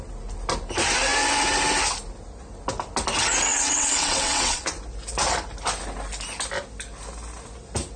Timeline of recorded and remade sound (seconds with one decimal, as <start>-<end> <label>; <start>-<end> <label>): 0.0-3.5 recorded; 3.5-4.7 remade; 4.7-8.0 recorded